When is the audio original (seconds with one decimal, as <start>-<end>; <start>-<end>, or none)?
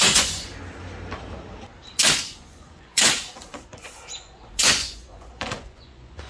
0.5-2.2